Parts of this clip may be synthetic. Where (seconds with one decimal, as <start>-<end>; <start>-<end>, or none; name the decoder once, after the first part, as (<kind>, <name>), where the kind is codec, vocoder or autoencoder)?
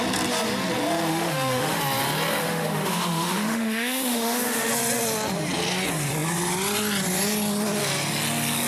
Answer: 1.1-1.8 (autoencoder, DAC-VAE); 2.4-4.7